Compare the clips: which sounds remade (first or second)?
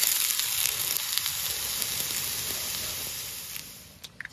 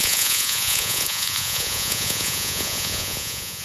second